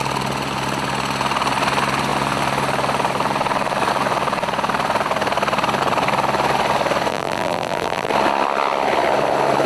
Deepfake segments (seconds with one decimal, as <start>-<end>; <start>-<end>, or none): 7.1-8.1